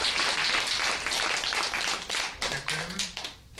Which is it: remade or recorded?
recorded